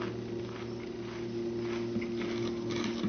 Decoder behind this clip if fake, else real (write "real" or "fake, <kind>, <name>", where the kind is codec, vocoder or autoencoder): real